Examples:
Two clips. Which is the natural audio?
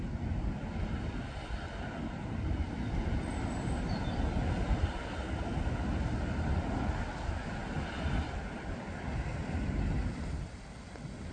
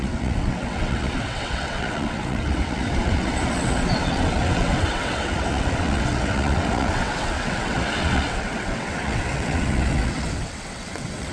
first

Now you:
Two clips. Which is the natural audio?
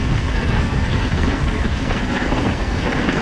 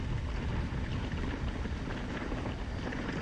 second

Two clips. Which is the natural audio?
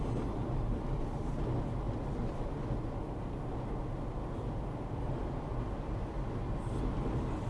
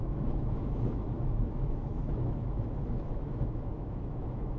first